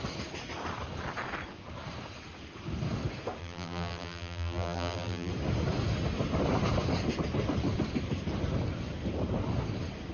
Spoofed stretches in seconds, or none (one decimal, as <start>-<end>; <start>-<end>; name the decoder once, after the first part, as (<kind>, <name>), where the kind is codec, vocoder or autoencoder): 3.4-5.3 (vocoder, BigVGAN v2)